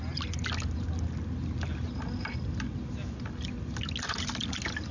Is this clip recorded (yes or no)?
yes